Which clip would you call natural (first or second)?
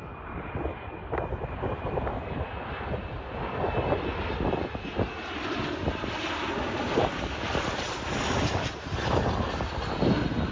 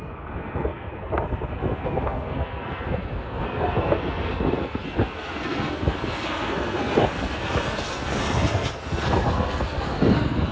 first